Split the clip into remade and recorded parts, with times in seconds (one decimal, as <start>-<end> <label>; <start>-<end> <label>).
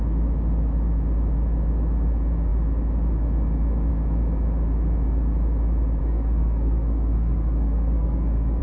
0.0-6.0 recorded; 6.0-8.6 remade